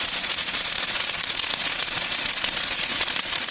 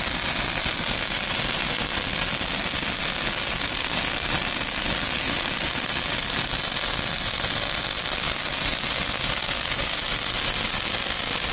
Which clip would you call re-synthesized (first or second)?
first